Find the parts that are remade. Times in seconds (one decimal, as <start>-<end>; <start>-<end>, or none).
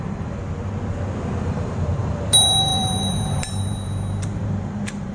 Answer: 0.0-0.4; 1.4-5.1